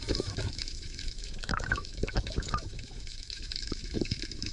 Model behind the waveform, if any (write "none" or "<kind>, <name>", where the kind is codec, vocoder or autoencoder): autoencoder, DAC-VAE